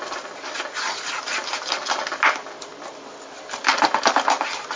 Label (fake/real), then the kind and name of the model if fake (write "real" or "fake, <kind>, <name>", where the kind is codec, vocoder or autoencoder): real